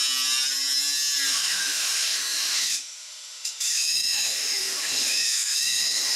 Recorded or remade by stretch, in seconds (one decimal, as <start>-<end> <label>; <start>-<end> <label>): 0.0-1.3 recorded; 1.3-6.2 remade